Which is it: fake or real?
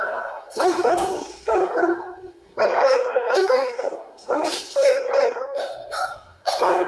fake